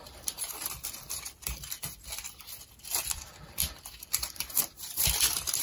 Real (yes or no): no